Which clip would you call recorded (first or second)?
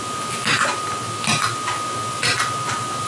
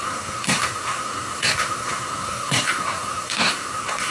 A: first